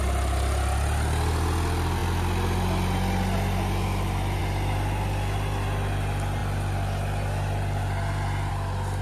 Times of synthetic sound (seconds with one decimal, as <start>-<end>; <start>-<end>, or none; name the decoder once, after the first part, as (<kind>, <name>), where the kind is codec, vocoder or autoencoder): none